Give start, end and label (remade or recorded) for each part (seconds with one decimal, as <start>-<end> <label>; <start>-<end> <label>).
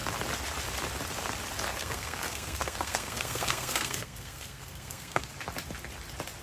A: 0.0-1.8 recorded; 1.8-5.3 remade; 5.3-6.4 recorded